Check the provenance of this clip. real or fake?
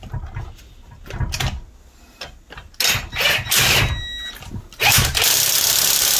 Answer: real